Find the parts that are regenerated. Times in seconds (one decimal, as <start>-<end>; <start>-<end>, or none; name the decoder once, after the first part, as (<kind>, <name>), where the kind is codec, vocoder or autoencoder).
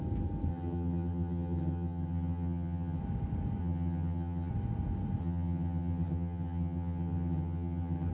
0.5-3.0 (vocoder, HiFi-GAN); 3.6-4.5; 5.2-8.1